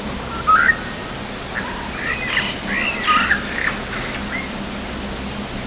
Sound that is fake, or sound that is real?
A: real